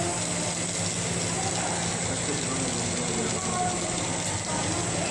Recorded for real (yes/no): yes